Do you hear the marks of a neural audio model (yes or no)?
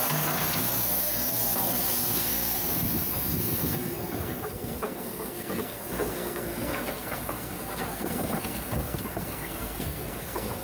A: yes